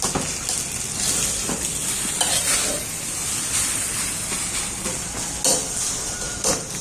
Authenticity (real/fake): real